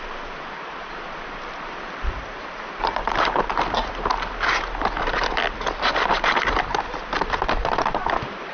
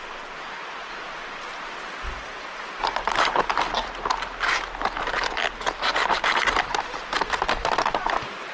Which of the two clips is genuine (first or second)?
second